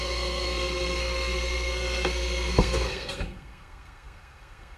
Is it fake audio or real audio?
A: fake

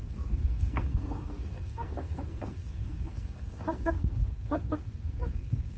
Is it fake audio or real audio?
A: fake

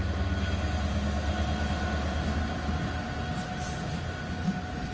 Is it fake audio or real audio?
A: real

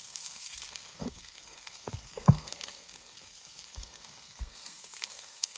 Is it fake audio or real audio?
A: fake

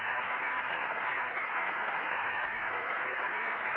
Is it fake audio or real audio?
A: fake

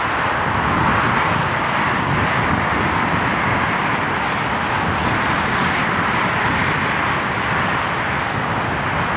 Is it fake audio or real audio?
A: real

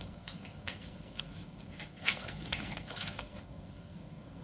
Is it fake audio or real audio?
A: fake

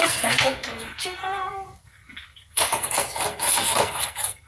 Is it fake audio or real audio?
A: fake